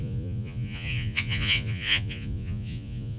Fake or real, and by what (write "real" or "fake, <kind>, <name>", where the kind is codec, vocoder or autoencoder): fake, vocoder, Vocos